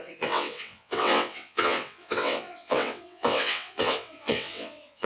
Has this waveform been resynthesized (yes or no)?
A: yes